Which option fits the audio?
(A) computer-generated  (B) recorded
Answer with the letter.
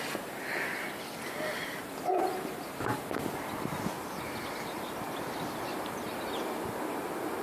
B